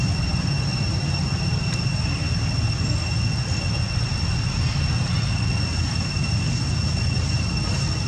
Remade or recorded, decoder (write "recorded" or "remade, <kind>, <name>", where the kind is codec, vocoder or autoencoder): recorded